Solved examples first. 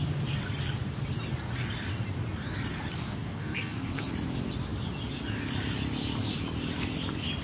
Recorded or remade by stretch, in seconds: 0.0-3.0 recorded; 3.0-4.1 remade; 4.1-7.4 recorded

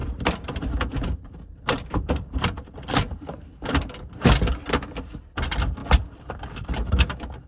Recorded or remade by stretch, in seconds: 0.0-2.1 remade; 2.1-5.8 recorded; 5.8-6.3 remade; 6.3-7.5 recorded